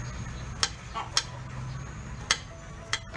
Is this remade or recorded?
recorded